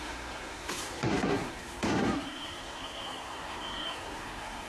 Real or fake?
fake